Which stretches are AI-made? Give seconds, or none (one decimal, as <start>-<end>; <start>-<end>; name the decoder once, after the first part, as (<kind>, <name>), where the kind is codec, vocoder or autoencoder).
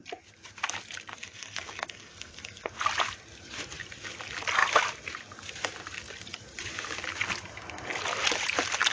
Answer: 1.1-2.7 (codec, SNAC)